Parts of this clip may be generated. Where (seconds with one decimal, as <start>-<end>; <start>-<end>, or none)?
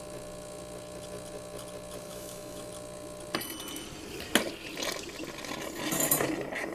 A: 2.1-2.7